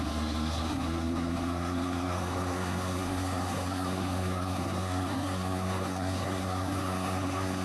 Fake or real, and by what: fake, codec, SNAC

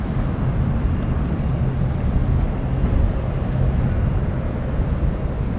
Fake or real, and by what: real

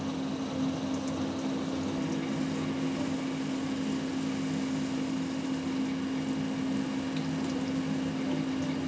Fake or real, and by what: real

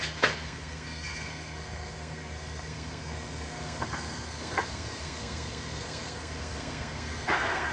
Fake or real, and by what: fake, codec, SNAC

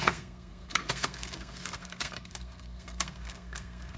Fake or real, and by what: fake, codec, SNAC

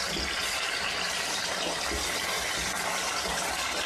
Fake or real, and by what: real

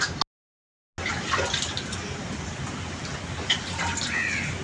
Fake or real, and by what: real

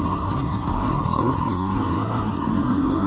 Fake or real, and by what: fake, codec, SNAC